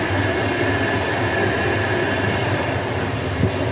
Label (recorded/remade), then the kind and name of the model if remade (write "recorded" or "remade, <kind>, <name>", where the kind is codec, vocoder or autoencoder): recorded